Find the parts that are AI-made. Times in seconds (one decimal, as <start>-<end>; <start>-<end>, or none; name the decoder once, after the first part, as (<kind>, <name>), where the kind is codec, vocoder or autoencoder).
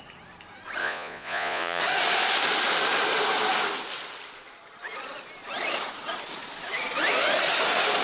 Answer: 0.8-1.8 (vocoder, Vocos)